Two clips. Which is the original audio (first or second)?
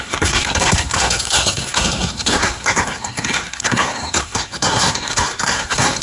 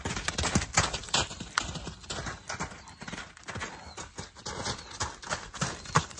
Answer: second